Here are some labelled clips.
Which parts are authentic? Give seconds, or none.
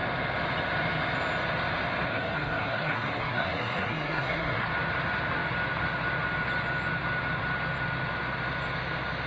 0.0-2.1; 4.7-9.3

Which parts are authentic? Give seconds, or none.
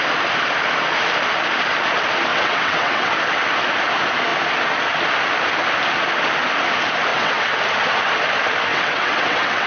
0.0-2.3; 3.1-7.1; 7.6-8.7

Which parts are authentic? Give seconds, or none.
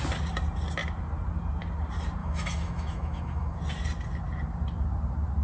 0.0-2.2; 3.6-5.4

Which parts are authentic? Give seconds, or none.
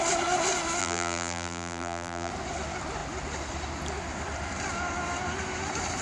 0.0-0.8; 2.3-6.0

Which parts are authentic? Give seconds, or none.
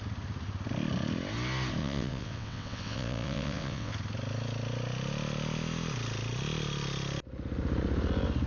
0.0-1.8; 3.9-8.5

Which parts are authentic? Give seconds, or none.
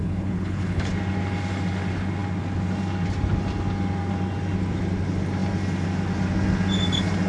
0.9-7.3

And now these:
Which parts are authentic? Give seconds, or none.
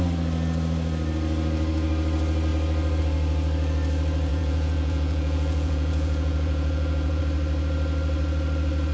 0.0-4.3; 7.2-8.9